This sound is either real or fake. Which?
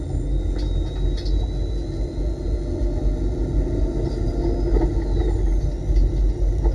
real